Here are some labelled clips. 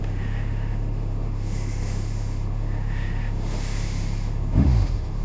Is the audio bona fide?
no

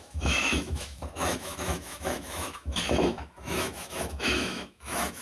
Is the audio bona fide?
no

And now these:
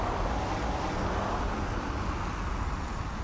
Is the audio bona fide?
yes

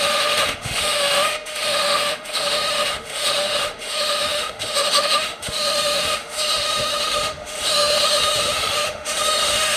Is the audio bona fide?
no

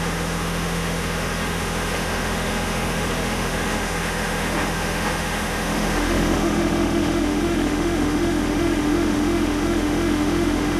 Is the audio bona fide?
no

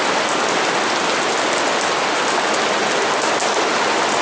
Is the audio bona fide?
yes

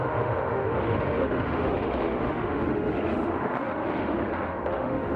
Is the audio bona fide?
no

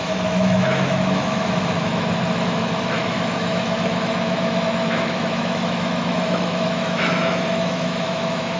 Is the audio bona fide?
no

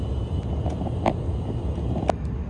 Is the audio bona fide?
yes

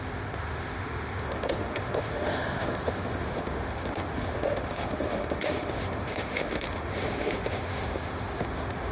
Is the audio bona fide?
no